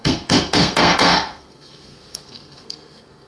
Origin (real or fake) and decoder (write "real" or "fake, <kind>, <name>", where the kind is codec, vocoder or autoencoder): fake, codec, SNAC